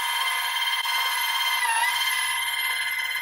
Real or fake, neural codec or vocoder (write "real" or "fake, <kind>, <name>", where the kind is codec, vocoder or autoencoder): real